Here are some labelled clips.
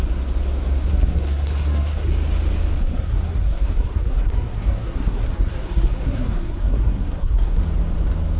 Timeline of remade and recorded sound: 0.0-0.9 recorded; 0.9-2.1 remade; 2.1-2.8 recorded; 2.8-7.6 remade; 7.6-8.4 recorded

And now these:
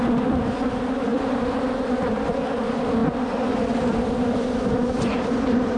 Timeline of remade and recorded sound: 0.0-1.1 recorded; 1.1-2.4 remade; 2.4-5.8 recorded

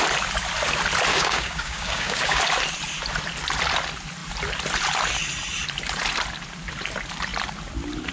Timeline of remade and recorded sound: 0.0-1.1 recorded; 1.1-2.4 remade; 2.4-8.1 recorded

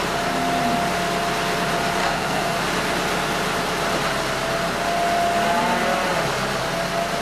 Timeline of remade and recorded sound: 0.0-2.0 recorded; 2.0-2.6 remade; 2.6-7.2 recorded

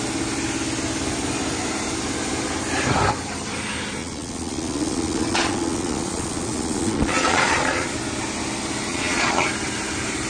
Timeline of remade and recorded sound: 0.0-4.0 recorded; 4.0-7.9 remade; 7.9-8.9 recorded; 8.9-9.5 remade; 9.5-10.3 recorded

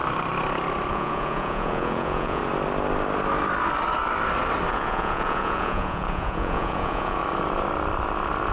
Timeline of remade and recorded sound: 0.0-0.9 recorded; 0.9-2.4 remade; 2.4-4.7 recorded; 4.7-7.2 remade; 7.2-8.5 recorded

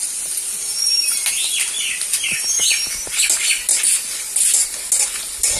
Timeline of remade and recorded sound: 0.0-5.6 recorded